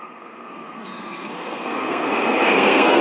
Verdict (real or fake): fake